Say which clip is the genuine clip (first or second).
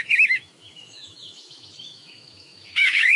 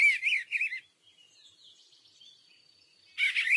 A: second